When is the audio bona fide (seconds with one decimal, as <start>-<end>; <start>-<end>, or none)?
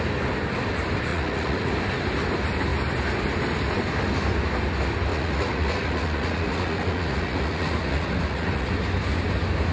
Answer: 0.0-1.1; 1.7-5.1; 8.7-9.7